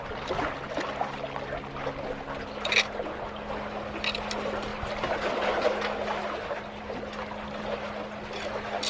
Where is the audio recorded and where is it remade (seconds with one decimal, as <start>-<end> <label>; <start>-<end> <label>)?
0.0-8.9 recorded